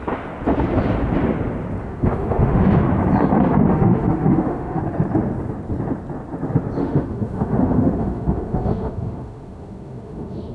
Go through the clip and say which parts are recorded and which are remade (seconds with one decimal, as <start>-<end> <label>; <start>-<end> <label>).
0.0-1.8 recorded; 1.8-2.8 remade; 2.8-3.7 recorded; 3.7-4.8 remade; 4.8-6.8 recorded; 6.8-10.5 remade